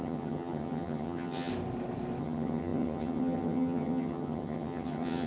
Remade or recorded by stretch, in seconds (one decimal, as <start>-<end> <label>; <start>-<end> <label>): 0.0-1.5 remade; 1.5-2.2 recorded; 2.2-5.3 remade